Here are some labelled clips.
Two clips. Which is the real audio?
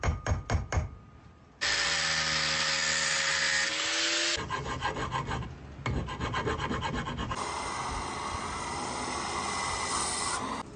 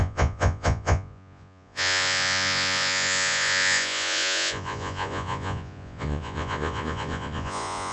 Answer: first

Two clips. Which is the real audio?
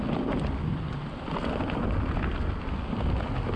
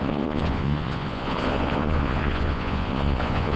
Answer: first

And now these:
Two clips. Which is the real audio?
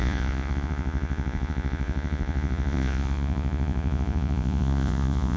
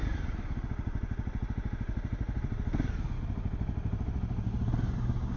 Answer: second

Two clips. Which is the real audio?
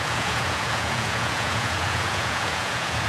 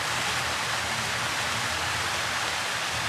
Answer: second